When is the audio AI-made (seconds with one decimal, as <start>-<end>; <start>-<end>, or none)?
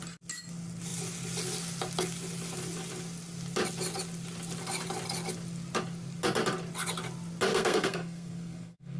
7.5-9.0